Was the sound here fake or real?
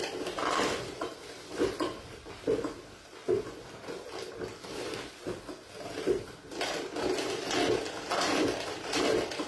fake